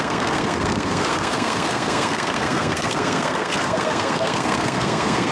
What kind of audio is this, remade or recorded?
remade